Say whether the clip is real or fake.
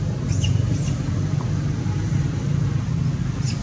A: real